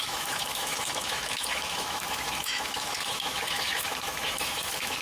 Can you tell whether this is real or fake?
fake